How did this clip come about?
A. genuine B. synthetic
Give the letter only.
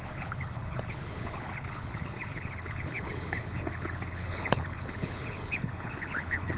B